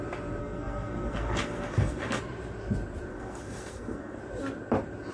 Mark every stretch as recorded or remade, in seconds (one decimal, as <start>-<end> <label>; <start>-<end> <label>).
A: 0.0-0.4 recorded; 0.4-2.2 remade; 2.2-3.1 recorded; 3.1-4.2 remade; 4.2-5.1 recorded